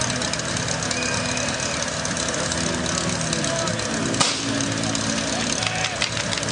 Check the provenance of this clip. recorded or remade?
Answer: recorded